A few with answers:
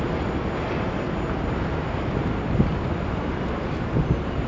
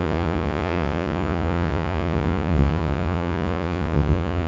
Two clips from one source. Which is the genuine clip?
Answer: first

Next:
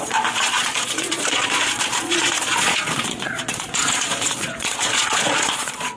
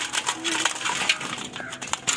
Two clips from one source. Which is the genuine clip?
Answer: second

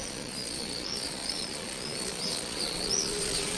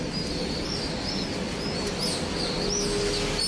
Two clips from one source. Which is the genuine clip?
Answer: second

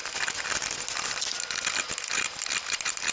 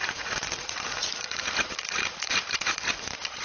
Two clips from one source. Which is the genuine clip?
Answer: first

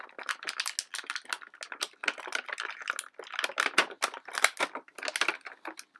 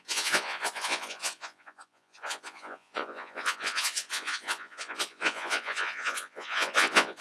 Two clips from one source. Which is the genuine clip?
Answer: first